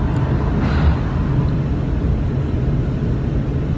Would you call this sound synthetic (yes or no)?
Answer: no